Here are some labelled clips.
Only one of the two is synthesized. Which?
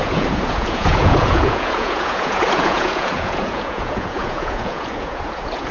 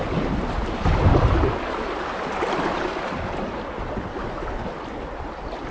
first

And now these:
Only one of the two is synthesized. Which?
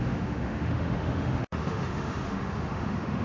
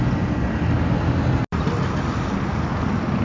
first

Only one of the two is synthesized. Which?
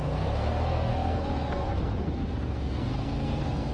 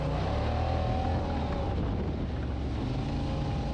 first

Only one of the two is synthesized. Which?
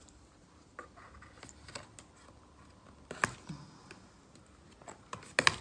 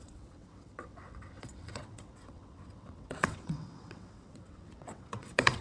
second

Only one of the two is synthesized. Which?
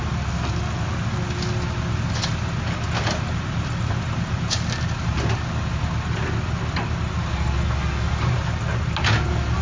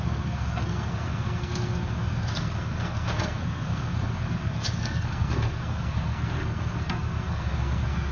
second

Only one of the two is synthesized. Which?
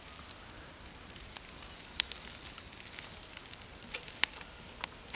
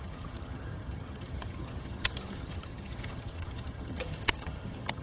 second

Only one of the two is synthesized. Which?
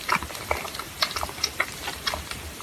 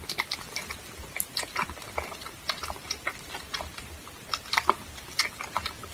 first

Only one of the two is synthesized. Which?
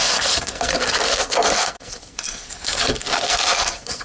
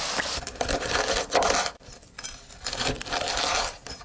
first